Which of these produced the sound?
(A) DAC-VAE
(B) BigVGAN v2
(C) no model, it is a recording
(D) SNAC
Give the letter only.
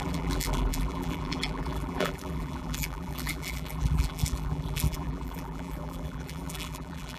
B